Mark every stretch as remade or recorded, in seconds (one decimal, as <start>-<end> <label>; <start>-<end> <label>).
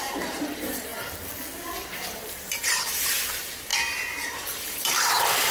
0.0-0.9 remade; 0.9-2.1 recorded; 2.1-3.7 remade; 3.7-4.4 recorded; 4.4-5.5 remade